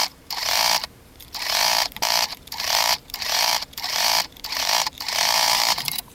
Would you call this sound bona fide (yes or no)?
no